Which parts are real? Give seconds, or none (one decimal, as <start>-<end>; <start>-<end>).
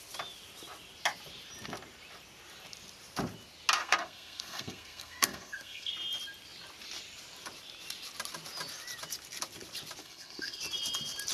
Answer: 0.0-3.8; 5.9-10.0; 10.6-11.3